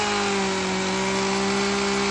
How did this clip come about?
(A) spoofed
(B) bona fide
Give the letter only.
B